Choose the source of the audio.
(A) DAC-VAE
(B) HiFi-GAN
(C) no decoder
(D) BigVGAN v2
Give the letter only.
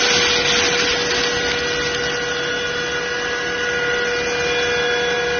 C